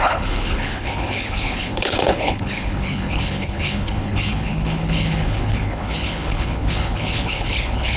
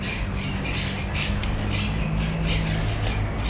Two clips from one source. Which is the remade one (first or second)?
first